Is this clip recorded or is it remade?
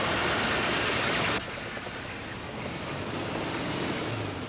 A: recorded